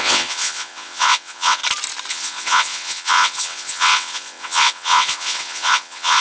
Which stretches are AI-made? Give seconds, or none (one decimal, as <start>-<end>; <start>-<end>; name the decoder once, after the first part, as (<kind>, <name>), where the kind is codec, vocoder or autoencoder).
0.0-1.6 (vocoder, WaveNeXt); 2.1-6.2